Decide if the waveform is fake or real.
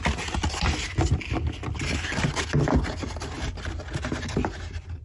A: real